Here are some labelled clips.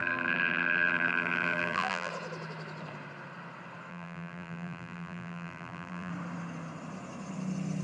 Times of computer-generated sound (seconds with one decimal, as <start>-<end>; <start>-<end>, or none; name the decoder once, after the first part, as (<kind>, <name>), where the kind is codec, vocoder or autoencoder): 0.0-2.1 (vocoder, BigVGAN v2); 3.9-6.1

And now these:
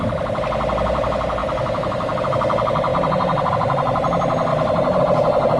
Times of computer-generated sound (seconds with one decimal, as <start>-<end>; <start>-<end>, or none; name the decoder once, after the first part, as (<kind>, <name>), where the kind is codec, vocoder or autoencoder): 1.4-2.2 (autoencoder, DAC-VAE)

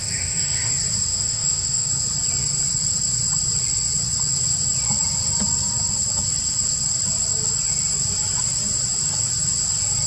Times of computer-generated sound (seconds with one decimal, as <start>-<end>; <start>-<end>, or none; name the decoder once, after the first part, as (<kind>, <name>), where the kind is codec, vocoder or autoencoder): 0.0-0.7 (autoencoder, DAC-VAE); 1.1-1.9